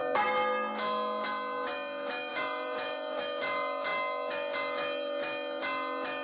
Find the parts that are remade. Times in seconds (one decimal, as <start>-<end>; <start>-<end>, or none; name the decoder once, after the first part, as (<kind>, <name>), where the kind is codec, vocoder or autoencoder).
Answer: 2.3-3.2 (vocoder, Vocos)